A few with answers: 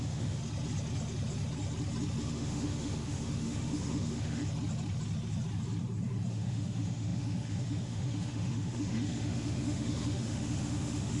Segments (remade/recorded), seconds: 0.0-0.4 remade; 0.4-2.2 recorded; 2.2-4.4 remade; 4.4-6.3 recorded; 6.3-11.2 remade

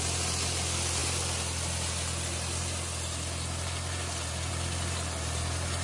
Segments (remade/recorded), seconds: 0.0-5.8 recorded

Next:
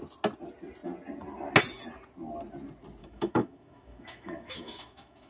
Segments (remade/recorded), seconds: 0.0-3.0 recorded; 3.0-5.3 remade

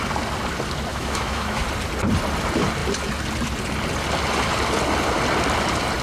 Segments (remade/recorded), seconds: 0.0-0.9 recorded; 0.9-1.6 remade; 1.6-6.0 recorded

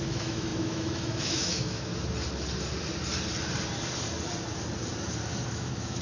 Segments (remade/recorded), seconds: 0.0-1.9 remade; 1.9-5.5 recorded; 5.5-6.0 remade